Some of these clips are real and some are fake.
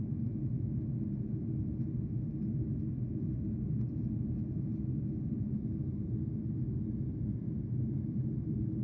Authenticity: real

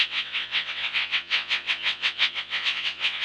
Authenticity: fake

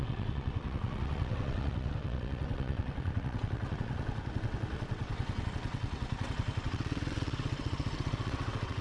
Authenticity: fake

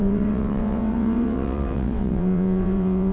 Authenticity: fake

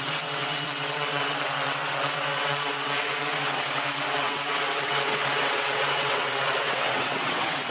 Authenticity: fake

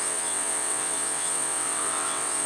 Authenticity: fake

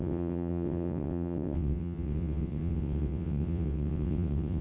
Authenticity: fake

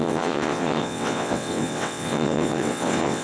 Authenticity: fake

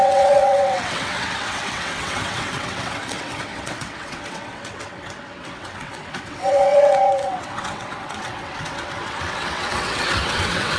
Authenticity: fake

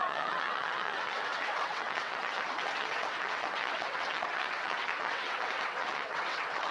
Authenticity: fake